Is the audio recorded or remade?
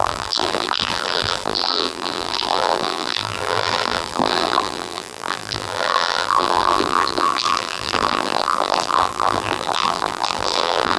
remade